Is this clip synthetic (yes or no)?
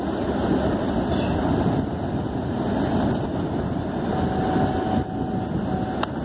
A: no